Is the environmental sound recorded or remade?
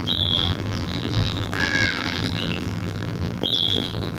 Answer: remade